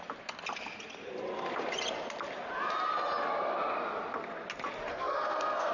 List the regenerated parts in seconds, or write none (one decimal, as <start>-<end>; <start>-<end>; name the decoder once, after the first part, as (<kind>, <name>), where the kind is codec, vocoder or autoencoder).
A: 4.9-5.7 (codec, SNAC)